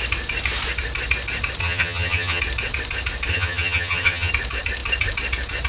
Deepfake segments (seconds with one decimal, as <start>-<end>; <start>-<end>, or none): 1.6-2.4; 3.3-4.3